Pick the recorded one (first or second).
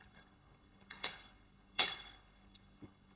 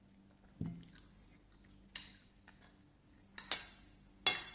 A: second